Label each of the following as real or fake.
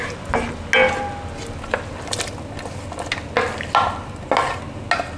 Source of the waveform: real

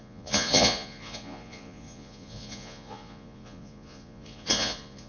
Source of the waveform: fake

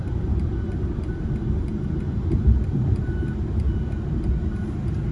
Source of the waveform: real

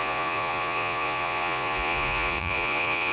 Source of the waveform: fake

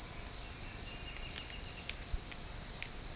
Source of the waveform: real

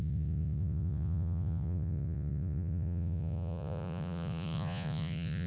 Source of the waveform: fake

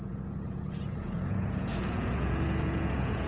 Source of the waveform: fake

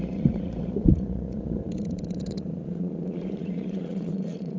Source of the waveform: fake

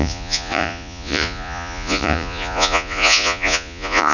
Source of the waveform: fake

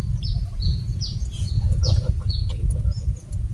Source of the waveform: fake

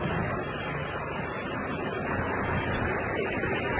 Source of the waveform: real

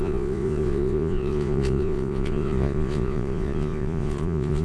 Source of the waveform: fake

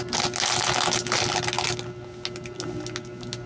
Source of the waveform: real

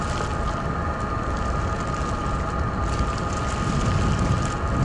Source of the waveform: real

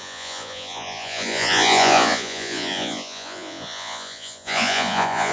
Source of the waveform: fake